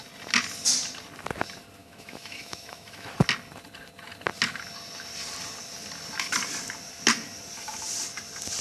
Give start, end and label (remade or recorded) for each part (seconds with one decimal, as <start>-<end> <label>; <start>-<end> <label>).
0.0-1.8 recorded; 1.8-3.1 remade; 3.1-8.6 recorded